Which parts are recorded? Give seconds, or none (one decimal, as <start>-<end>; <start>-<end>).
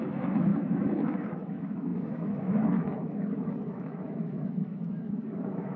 none